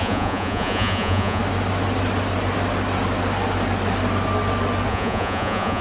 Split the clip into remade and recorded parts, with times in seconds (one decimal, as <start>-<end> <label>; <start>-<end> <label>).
0.0-1.4 remade; 1.4-4.9 recorded; 4.9-5.8 remade